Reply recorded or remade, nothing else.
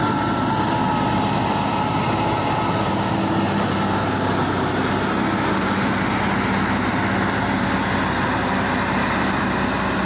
recorded